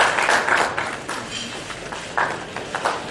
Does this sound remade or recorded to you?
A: recorded